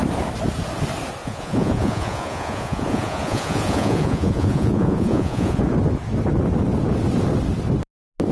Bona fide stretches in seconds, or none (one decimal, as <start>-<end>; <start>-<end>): 0.0-1.2; 5.6-8.3